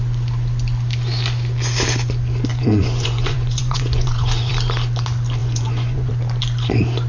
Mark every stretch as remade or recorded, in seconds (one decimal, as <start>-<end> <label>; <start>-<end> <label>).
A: 0.0-2.5 recorded; 2.5-4.5 remade; 4.5-5.4 recorded; 5.4-6.1 remade; 6.1-7.1 recorded